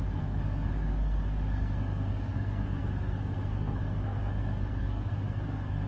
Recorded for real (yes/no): no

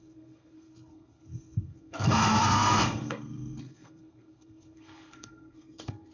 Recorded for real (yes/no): no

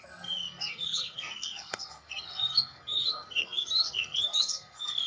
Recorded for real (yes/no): no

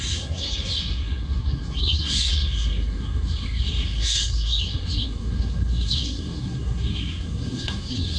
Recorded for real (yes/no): no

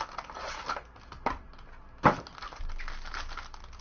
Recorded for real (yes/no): yes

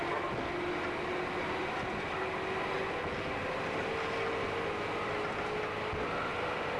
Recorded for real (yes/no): yes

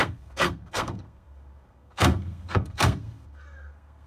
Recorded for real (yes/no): no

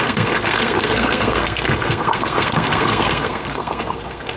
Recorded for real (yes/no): no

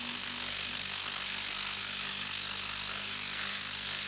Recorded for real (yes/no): no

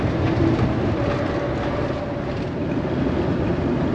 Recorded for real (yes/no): yes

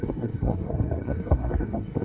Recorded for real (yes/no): no